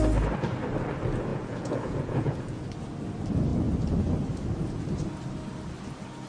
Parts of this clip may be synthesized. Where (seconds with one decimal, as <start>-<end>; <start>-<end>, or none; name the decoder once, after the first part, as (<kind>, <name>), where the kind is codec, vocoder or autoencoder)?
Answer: 1.3-2.6 (vocoder, Vocos)